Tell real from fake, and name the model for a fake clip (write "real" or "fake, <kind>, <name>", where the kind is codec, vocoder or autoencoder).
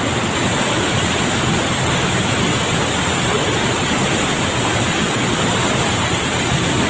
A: real